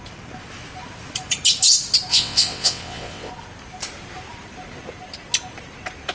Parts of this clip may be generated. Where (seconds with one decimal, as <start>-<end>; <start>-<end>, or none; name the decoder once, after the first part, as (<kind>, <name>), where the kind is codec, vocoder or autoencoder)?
2.1-3.3 (vocoder, WaveNeXt)